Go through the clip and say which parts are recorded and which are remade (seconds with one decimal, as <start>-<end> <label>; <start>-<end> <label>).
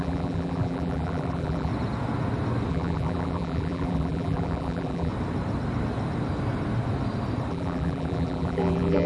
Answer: 0.0-1.7 remade; 1.7-2.7 recorded; 2.7-5.1 remade; 5.1-7.5 recorded; 7.5-9.1 remade